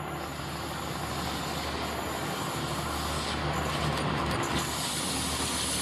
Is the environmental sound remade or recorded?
recorded